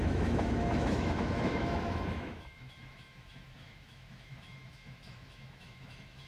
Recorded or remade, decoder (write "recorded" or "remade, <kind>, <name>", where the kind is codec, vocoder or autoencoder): remade, autoencoder, DAC-VAE